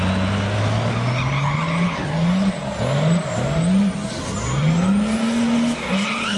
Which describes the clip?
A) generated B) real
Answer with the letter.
B